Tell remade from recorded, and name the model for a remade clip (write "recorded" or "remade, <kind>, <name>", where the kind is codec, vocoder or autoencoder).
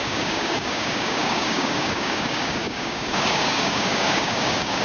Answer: remade, codec, DAC